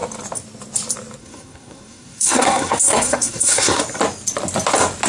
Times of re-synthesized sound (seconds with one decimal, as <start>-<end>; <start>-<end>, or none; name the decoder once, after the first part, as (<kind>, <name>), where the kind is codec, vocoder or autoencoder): 1.2-3.8 (codec, SNAC)